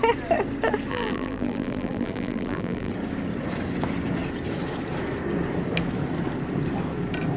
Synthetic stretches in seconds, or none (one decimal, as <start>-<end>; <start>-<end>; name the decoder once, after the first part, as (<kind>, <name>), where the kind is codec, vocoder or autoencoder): 0.9-2.9 (vocoder, BigVGAN v2)